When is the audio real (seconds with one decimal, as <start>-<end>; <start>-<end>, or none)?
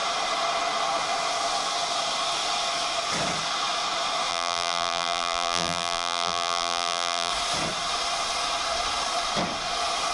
0.0-4.3; 7.3-10.1